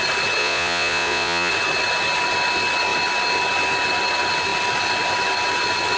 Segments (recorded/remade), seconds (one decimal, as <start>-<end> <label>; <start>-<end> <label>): 0.0-0.4 recorded; 0.4-1.5 remade; 1.5-6.0 recorded